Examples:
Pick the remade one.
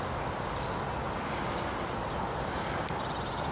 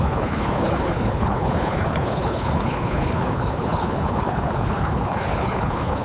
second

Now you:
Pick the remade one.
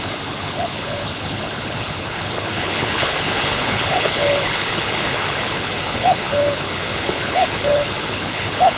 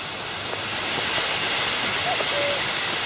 first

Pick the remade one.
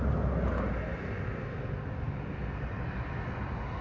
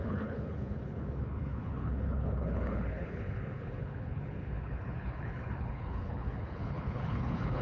second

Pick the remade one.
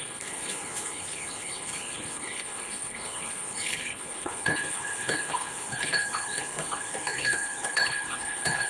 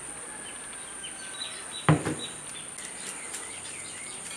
first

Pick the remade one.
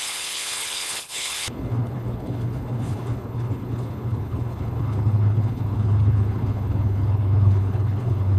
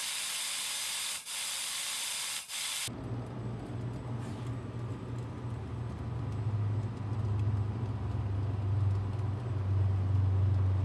first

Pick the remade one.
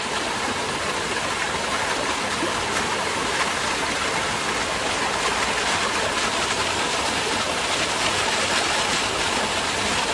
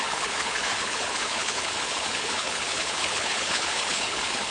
second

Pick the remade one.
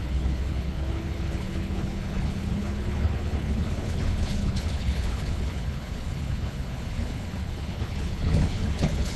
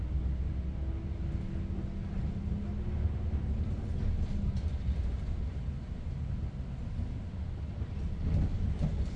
first